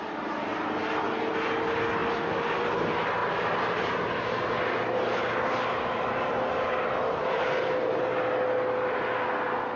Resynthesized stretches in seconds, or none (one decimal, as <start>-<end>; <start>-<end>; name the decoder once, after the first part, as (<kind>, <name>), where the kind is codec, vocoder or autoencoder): none

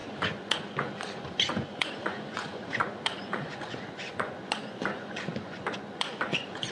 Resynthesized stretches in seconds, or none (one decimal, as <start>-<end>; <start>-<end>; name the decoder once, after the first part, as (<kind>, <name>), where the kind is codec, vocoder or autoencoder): 0.0-6.7 (vocoder, Vocos)

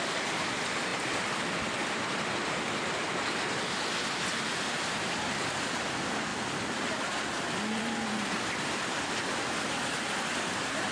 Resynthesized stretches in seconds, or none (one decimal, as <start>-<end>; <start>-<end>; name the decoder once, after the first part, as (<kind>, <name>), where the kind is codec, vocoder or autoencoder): 6.3-9.1 (vocoder, BigVGAN v2)

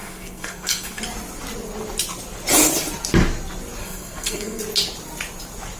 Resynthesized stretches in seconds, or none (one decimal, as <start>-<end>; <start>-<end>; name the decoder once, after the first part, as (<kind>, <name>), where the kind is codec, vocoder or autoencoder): 0.0-1.0 (codec, SNAC); 3.8-4.6

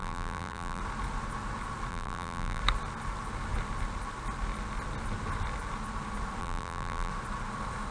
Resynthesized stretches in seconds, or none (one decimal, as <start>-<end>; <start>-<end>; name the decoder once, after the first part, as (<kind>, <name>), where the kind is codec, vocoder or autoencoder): 0.0-0.8 (vocoder, BigVGAN v2); 1.9-2.6; 6.4-7.1

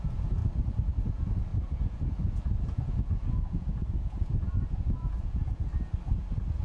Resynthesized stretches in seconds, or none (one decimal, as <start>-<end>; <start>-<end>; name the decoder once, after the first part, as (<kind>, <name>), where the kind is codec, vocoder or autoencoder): 0.0-0.4 (vocoder, Vocos); 1.1-5.7

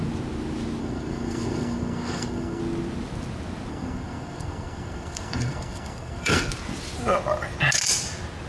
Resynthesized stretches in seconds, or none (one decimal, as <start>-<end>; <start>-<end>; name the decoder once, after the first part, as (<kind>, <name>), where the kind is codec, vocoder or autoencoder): 0.8-2.6 (codec, SNAC); 3.7-6.5